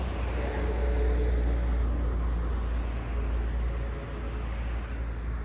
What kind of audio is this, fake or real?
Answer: real